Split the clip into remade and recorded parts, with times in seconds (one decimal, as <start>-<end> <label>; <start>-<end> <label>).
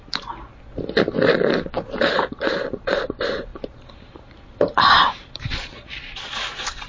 0.0-0.5 remade; 0.5-1.4 recorded; 1.4-6.9 remade